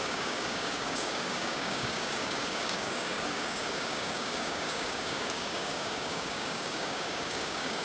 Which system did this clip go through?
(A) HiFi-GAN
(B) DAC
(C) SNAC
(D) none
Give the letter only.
B